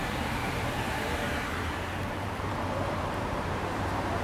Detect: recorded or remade remade